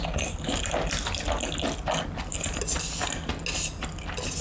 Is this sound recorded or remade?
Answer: recorded